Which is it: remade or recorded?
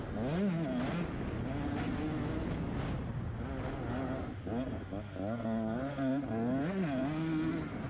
recorded